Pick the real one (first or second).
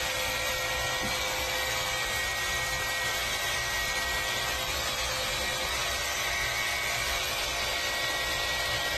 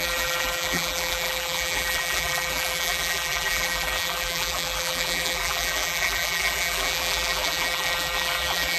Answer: first